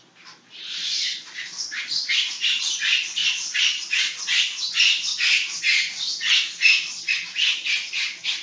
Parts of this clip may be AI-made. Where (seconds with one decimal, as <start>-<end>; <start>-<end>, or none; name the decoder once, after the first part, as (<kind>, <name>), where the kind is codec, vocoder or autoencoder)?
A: none